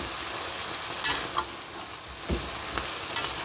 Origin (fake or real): real